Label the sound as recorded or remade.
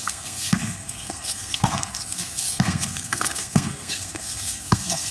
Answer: remade